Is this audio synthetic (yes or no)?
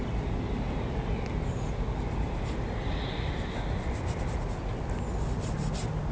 no